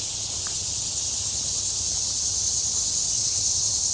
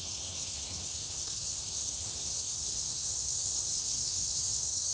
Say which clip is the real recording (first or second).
first